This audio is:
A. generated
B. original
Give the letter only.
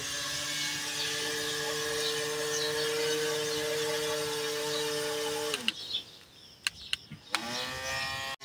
B